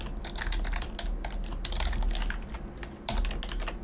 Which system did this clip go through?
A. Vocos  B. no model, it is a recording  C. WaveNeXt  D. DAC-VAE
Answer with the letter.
B